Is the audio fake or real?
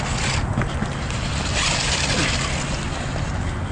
real